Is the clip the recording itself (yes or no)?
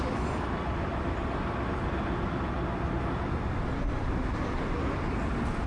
yes